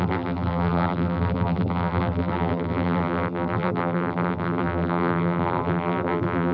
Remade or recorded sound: remade